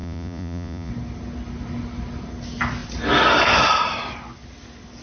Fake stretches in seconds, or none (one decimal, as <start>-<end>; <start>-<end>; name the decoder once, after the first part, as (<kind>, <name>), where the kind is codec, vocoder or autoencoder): 0.0-0.9 (vocoder, Vocos)